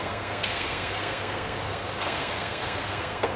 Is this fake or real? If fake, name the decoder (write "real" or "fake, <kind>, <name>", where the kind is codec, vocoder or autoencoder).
fake, codec, SNAC